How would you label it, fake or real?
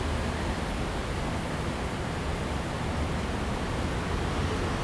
real